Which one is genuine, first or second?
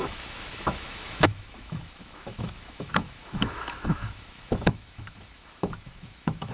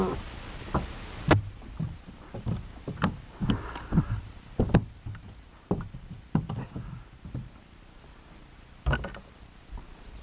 second